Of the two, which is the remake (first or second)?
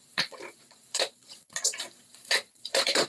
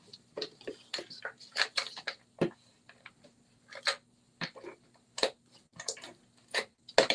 first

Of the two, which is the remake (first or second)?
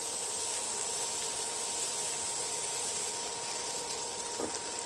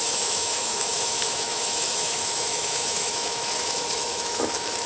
second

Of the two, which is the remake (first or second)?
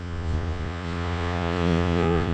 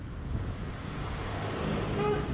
first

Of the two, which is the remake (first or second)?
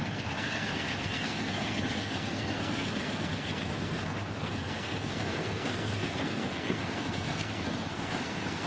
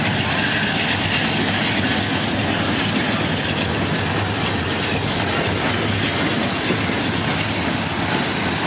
first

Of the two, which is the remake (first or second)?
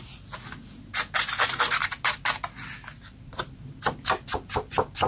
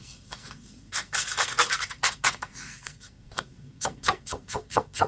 second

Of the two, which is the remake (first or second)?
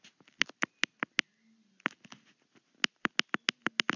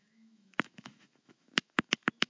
second